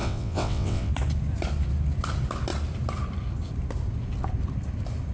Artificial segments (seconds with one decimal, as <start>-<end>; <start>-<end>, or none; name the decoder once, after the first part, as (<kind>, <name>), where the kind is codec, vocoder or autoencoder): 0.0-0.9 (vocoder, WaveNeXt)